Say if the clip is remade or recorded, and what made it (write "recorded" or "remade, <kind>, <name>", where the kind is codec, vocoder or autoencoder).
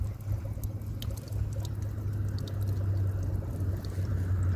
recorded